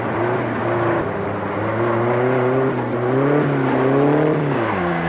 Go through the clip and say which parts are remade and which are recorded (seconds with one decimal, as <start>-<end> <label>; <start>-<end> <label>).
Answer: 0.0-4.4 recorded; 4.4-5.1 remade